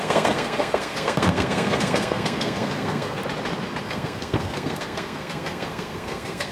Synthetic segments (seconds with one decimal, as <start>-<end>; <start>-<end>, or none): 0.0-3.2; 3.8-6.5